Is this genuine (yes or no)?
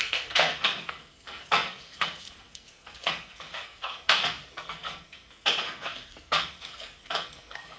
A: no